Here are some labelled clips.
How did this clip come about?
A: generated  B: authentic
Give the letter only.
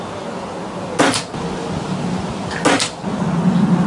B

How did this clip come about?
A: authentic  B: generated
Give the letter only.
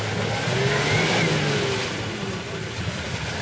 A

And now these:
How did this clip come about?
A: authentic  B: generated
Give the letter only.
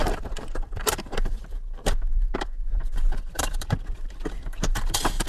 B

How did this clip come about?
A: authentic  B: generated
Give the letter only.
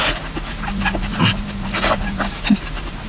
B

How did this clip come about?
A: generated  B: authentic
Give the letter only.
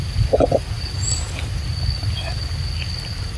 B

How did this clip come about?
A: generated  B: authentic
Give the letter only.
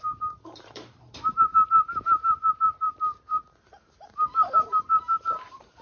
A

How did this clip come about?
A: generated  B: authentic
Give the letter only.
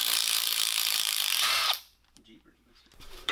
A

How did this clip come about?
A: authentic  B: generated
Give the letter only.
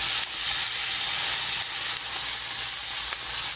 A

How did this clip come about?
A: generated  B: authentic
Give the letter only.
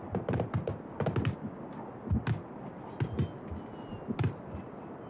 B